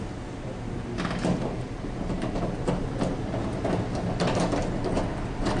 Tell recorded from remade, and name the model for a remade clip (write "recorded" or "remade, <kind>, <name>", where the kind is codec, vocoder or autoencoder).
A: recorded